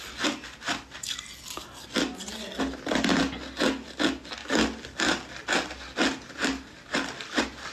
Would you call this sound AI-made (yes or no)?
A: no